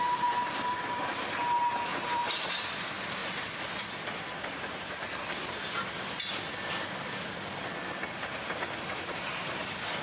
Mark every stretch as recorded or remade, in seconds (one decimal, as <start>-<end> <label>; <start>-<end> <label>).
0.0-1.9 recorded; 1.9-2.5 remade; 2.5-10.0 recorded

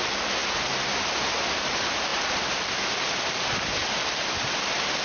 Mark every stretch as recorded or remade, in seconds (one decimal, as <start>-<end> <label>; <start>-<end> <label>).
0.0-5.0 recorded

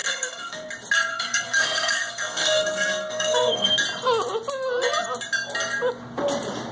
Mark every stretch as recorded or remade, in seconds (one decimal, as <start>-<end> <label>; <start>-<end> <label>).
0.0-0.7 remade; 0.7-1.1 recorded; 1.1-3.7 remade; 3.7-6.7 recorded

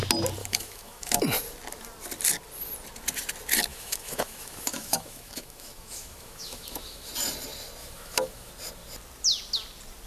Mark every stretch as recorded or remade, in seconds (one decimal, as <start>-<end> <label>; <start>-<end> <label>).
0.0-0.4 recorded; 0.4-1.2 remade; 1.2-3.7 recorded; 3.7-7.1 remade; 7.1-7.8 recorded; 7.8-8.5 remade; 8.5-10.1 recorded

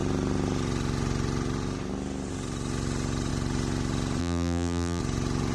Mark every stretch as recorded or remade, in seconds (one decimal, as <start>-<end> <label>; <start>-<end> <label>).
0.0-4.2 recorded; 4.2-5.0 remade; 5.0-5.5 recorded

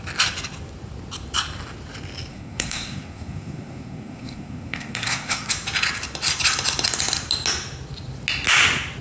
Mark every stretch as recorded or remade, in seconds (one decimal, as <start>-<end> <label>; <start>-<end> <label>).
0.0-2.3 recorded; 2.3-5.5 remade; 5.5-9.0 recorded